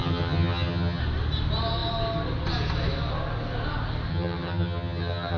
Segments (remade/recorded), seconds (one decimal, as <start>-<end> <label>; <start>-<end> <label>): 0.0-1.0 remade; 1.0-4.1 recorded; 4.1-5.4 remade